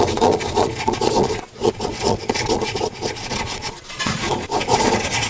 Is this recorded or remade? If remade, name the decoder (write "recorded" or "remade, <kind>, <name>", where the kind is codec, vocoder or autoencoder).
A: remade, vocoder, Vocos